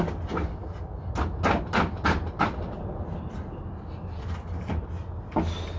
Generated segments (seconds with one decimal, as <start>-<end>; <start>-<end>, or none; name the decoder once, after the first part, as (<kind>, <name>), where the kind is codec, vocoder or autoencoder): none